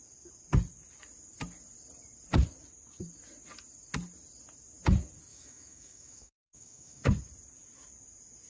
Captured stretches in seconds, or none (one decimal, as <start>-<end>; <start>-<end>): 0.0-5.3; 7.0-8.5